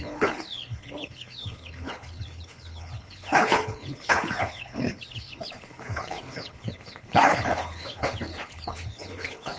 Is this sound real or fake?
fake